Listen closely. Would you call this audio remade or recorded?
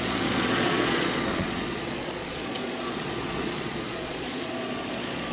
remade